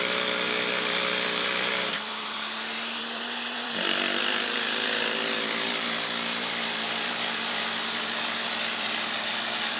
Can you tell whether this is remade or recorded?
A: remade